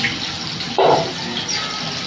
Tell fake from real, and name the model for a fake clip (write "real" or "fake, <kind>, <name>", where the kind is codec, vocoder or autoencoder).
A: real